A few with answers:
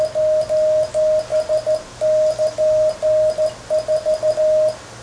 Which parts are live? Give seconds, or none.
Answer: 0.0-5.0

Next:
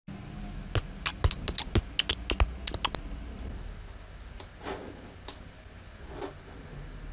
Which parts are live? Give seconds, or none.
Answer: 0.0-7.1

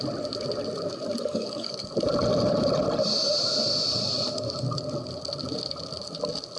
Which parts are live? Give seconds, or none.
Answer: 0.0-1.2; 1.9-6.6

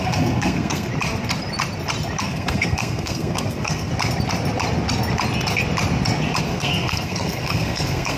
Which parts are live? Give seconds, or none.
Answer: 0.9-2.2; 3.9-6.4

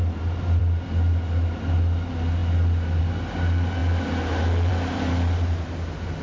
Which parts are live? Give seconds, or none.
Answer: 0.0-6.2

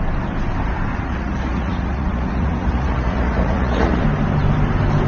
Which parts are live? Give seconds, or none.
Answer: 0.0-0.9; 4.0-5.1